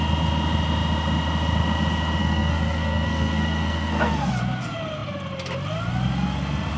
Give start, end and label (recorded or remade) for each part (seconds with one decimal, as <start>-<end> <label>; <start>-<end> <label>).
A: 0.0-2.2 recorded; 2.2-4.3 remade; 4.3-6.8 recorded